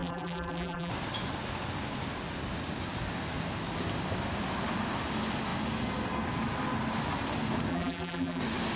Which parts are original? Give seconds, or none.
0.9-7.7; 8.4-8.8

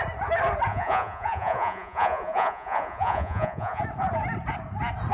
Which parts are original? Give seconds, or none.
0.0-0.7; 3.8-5.1